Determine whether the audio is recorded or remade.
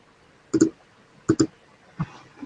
recorded